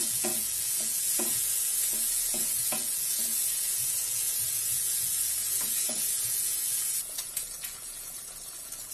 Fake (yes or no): yes